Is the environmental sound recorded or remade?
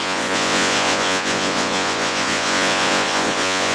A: remade